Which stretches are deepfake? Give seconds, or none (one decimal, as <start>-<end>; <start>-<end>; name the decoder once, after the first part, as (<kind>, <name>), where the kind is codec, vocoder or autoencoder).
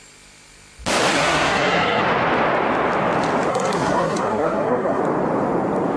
1.1-2.0 (codec, SNAC); 3.5-5.0